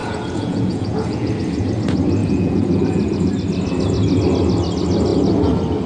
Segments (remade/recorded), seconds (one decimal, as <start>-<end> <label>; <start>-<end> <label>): 0.0-1.3 remade; 1.3-2.2 recorded; 2.2-3.3 remade; 3.3-5.9 recorded